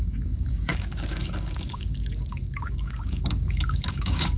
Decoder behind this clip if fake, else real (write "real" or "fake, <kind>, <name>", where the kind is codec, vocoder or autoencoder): fake, codec, DAC